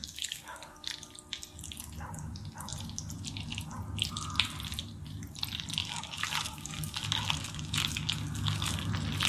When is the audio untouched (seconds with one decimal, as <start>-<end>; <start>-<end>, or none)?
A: 0.9-5.8; 8.9-9.3